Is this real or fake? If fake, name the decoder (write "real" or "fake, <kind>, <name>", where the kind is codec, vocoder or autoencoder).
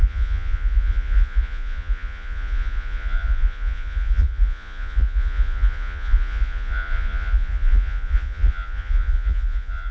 fake, vocoder, Vocos